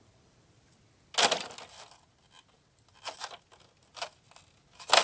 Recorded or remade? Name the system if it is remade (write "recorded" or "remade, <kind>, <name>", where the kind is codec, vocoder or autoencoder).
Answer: recorded